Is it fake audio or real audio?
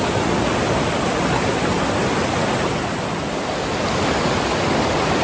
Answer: real